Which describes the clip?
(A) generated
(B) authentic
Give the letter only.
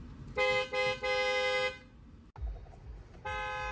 B